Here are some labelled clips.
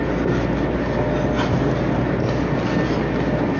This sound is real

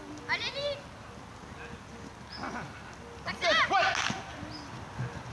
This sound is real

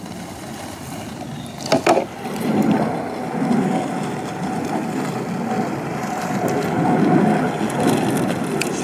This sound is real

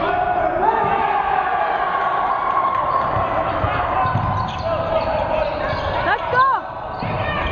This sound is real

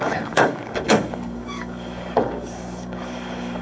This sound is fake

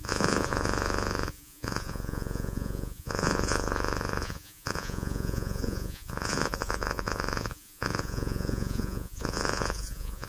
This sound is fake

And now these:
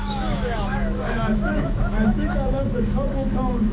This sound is fake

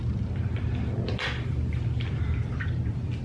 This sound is real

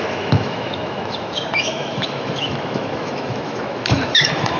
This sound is fake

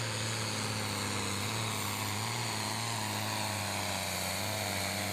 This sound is real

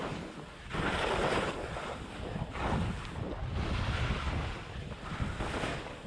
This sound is real